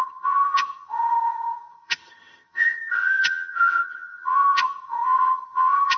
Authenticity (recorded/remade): remade